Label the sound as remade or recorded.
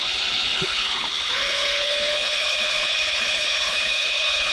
remade